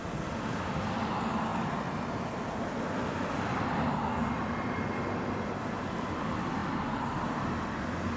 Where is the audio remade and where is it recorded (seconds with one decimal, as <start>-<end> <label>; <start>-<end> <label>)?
0.0-8.2 recorded